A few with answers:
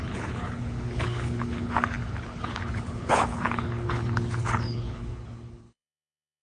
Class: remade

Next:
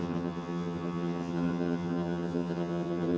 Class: remade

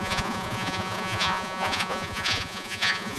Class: remade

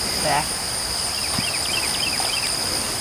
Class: recorded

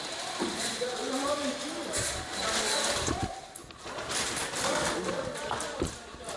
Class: recorded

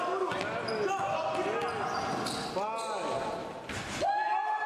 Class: recorded